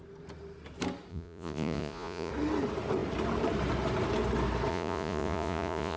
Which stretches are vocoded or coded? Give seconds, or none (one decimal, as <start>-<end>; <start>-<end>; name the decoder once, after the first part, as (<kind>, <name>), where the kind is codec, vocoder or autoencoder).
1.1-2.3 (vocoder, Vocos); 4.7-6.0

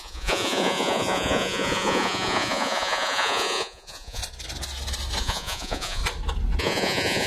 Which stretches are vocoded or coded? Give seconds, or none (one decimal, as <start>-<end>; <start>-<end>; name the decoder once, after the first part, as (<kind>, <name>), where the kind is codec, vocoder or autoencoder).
0.0-4.2 (vocoder, Vocos); 5.2-6.0; 6.6-7.3

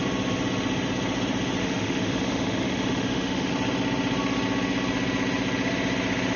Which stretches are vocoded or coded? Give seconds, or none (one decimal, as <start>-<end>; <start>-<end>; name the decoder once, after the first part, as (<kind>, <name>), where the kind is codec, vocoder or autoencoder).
1.6-3.5 (autoencoder, DAC-VAE)

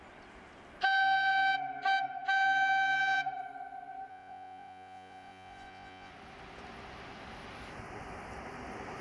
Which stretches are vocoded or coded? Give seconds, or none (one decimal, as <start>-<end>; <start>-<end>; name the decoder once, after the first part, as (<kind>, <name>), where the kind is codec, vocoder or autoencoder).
4.1-6.1 (vocoder, Vocos)